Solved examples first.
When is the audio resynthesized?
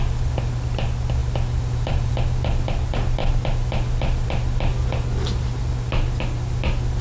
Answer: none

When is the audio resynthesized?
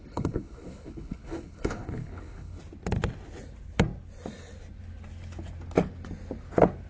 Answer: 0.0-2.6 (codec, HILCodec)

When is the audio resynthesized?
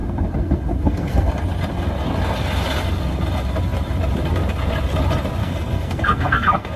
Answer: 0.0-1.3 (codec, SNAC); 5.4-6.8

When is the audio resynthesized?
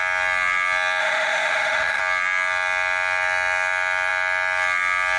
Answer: 1.0-2.0 (autoencoder, DAC-VAE)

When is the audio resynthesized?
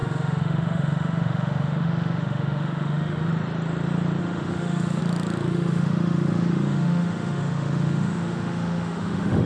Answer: 0.0-3.3 (autoencoder, DAC-VAE); 4.2-5.0; 5.5-9.5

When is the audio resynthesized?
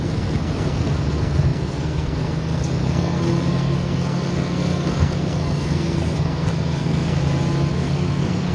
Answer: 0.0-7.2 (codec, SNAC); 7.7-8.5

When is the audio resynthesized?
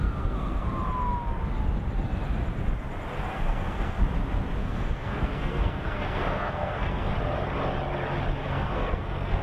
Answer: 0.0-0.7 (codec, SNAC); 3.3-4.0; 4.6-7.1; 8.4-9.4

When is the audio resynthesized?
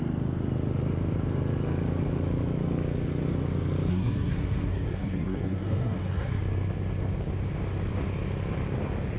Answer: 3.9-6.4 (codec, SNAC)